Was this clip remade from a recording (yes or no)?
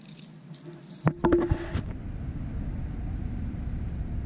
no